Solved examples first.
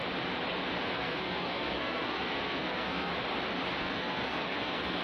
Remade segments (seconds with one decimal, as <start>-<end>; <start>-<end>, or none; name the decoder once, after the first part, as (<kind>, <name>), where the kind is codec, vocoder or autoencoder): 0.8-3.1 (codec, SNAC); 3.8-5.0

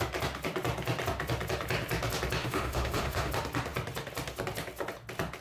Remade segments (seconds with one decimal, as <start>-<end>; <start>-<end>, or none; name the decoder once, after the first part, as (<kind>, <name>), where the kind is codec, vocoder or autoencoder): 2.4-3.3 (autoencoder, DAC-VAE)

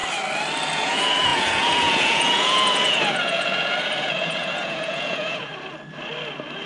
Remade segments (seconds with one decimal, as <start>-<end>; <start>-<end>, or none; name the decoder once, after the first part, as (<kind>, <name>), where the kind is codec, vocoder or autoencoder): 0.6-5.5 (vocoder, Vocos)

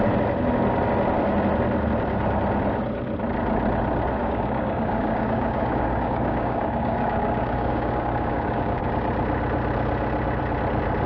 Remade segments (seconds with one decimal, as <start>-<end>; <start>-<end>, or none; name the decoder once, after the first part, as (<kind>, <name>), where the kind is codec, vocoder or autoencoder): 4.2-8.9 (codec, DAC)